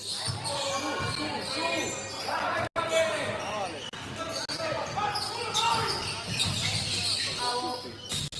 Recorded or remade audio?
recorded